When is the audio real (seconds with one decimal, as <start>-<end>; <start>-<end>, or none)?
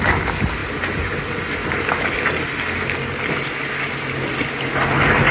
0.0-5.3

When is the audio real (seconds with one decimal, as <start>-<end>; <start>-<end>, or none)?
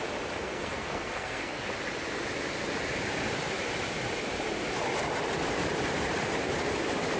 0.0-0.4; 1.6-7.2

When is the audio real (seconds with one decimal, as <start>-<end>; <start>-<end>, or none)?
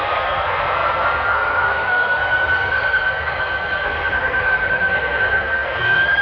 none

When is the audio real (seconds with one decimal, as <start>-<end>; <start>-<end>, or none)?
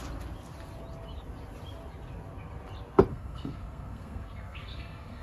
0.0-3.1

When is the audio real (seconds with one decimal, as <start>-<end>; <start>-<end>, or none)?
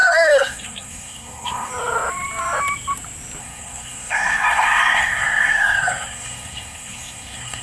1.7-3.4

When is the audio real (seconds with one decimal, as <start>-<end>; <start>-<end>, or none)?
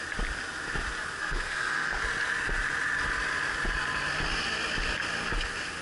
0.0-1.2; 2.0-5.8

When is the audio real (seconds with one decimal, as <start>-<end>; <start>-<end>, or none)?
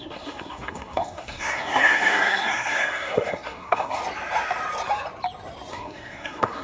4.0-5.7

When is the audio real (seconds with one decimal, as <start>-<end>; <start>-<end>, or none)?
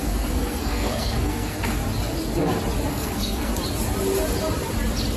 1.8-2.9; 3.5-5.2